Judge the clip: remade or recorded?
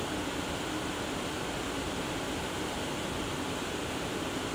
recorded